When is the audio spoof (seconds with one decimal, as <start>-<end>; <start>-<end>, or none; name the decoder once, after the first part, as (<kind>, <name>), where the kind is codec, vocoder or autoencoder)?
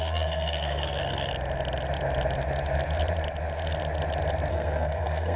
0.0-1.3 (codec, SNAC); 4.5-5.4